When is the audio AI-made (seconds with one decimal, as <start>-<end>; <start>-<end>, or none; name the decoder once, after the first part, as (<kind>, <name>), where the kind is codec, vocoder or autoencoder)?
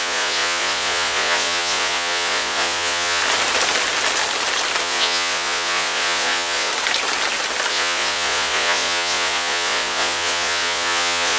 0.0-3.2 (vocoder, Vocos); 4.8-6.7; 7.7-11.4